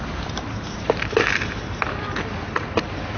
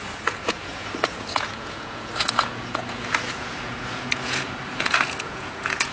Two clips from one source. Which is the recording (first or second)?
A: first